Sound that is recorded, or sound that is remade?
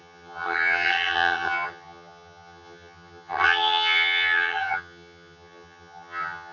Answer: remade